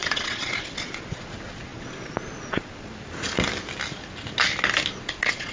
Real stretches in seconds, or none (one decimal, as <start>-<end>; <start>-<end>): 2.9-4.9